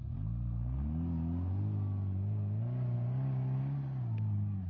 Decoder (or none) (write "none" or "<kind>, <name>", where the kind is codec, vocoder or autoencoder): none